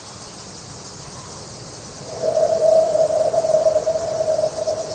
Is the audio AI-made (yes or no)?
no